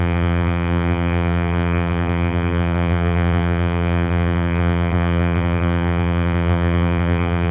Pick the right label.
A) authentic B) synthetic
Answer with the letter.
B